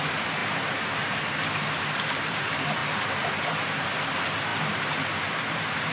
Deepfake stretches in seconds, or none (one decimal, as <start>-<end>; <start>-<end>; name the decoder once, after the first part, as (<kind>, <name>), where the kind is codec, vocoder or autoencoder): 0.0-2.8 (vocoder, BigVGAN v2); 3.3-4.5; 5.4-5.9